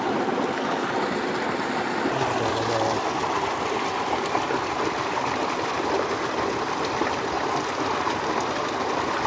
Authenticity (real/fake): real